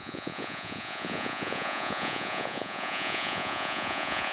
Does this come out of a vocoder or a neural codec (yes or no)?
yes